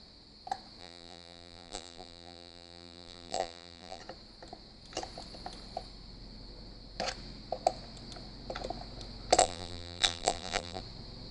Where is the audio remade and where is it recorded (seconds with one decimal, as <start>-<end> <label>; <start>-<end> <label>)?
0.0-0.8 recorded; 0.8-4.0 remade; 4.0-9.4 recorded; 9.4-10.8 remade; 10.8-11.3 recorded